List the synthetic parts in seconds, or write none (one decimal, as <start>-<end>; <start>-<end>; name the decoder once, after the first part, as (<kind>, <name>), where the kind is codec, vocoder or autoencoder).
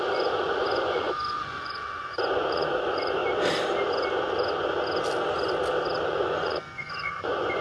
0.0-3.2 (vocoder, Vocos); 6.1-7.6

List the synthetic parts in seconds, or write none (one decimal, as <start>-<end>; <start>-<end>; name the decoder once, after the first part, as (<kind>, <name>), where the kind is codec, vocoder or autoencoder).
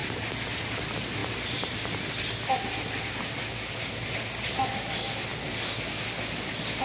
none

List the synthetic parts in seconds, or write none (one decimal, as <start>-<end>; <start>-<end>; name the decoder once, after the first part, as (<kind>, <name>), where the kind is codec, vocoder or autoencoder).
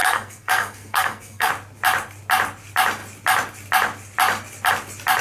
0.0-1.5 (codec, SNAC)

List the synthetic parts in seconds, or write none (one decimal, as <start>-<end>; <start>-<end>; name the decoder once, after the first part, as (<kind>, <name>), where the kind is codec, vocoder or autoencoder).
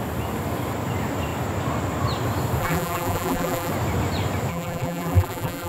2.6-3.7 (vocoder, BigVGAN v2); 4.5-5.7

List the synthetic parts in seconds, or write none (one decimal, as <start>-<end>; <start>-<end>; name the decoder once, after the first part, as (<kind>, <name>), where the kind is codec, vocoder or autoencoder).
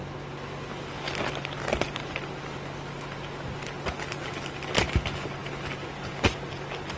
none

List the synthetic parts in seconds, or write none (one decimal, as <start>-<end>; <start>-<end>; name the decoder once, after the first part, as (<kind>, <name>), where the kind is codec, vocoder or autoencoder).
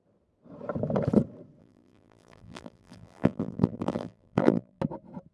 1.6-4.8 (vocoder, BigVGAN v2)